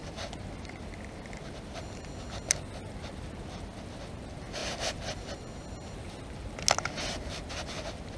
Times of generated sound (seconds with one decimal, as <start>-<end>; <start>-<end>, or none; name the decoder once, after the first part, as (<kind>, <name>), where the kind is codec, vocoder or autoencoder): none